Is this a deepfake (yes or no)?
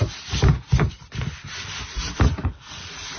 no